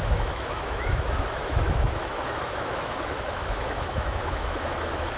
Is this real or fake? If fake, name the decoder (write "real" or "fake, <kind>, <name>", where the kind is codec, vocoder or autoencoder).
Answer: fake, autoencoder, DAC-VAE